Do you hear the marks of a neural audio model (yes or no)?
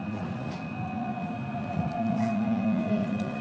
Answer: yes